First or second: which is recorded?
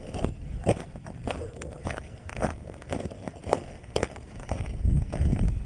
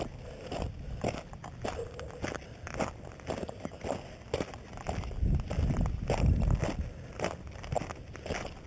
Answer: second